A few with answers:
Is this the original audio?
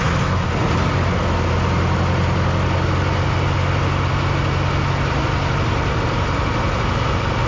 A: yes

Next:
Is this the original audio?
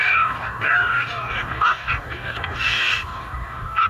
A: no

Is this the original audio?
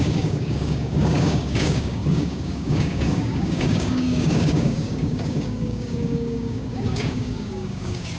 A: no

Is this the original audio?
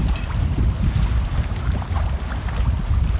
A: yes